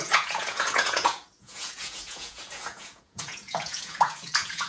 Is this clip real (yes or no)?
no